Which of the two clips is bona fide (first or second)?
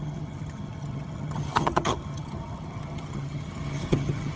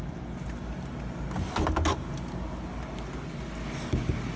second